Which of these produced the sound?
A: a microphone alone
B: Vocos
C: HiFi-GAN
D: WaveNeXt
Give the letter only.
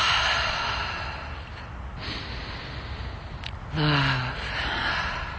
A